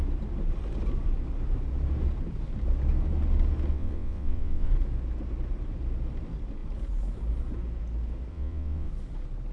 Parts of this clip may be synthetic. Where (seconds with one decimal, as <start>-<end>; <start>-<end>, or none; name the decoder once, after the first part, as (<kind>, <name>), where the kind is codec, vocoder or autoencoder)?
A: 3.7-4.7 (vocoder, WaveNeXt); 8.3-8.9